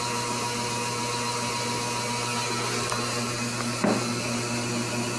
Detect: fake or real real